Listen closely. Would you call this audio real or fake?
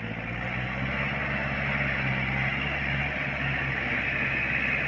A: real